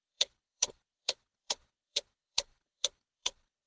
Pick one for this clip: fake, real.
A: fake